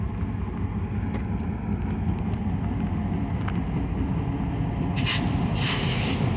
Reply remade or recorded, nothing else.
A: recorded